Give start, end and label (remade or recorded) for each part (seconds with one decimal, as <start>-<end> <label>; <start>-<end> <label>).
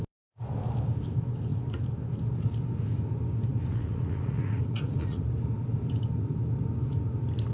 0.0-3.7 recorded; 3.7-5.2 remade; 5.2-7.5 recorded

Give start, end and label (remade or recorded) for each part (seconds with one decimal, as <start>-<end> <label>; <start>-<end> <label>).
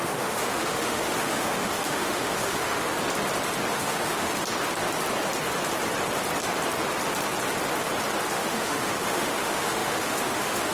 0.0-2.9 remade; 2.9-3.7 recorded; 3.7-4.4 remade; 4.4-8.3 recorded; 8.3-10.7 remade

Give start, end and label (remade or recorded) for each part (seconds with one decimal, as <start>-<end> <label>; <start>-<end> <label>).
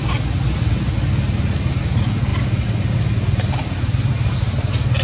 0.0-5.0 recorded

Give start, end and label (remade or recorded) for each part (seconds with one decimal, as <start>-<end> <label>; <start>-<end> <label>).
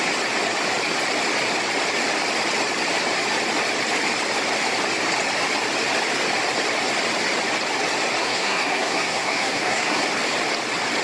0.0-8.2 recorded; 8.2-10.0 remade; 10.0-11.0 recorded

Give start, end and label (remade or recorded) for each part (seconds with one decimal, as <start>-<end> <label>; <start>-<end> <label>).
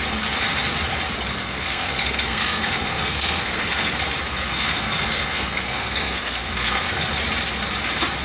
0.0-1.4 recorded; 1.4-3.9 remade; 3.9-4.3 recorded; 4.3-7.1 remade; 7.1-8.2 recorded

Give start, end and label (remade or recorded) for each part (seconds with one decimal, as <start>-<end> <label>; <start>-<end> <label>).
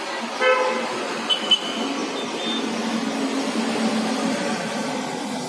0.0-5.5 recorded